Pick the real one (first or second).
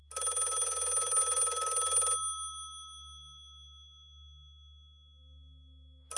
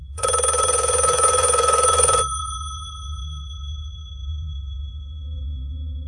first